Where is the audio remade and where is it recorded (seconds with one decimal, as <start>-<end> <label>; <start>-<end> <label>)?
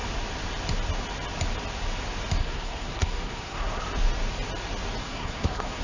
0.0-2.4 recorded; 2.4-3.8 remade; 3.8-5.0 recorded; 5.0-5.8 remade